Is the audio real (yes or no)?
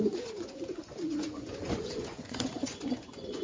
no